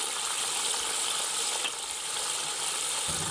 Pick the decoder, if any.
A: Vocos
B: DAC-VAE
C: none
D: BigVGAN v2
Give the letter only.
C